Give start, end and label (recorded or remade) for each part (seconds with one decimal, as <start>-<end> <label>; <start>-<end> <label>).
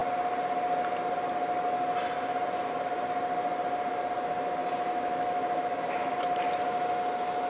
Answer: 0.0-4.9 recorded; 4.9-6.3 remade; 6.3-7.5 recorded